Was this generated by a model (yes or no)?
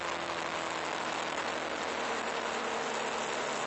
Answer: no